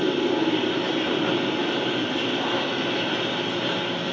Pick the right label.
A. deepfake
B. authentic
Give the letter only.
B